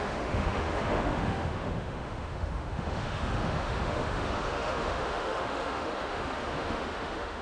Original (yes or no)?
no